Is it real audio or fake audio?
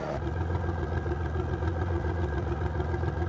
fake